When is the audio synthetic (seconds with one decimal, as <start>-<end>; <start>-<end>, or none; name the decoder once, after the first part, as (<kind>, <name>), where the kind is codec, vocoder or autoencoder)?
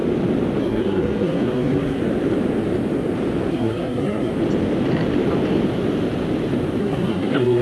0.6-2.0 (codec, SNAC); 3.5-4.3; 6.8-7.6